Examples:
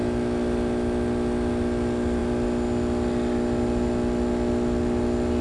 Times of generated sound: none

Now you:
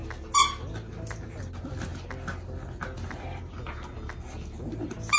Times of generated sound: none

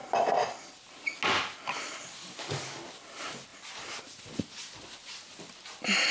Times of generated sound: 2.2-2.8

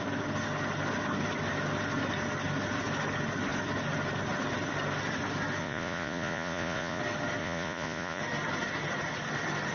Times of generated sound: 5.6-7.0; 7.4-8.2